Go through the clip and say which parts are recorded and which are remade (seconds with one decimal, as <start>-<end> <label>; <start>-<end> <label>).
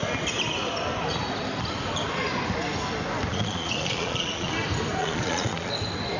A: 0.0-3.3 recorded; 3.3-4.5 remade; 4.5-5.0 recorded; 5.0-5.7 remade; 5.7-6.2 recorded